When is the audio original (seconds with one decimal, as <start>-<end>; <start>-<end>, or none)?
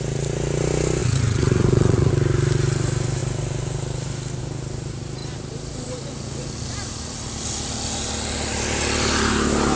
0.0-1.0; 2.1-9.8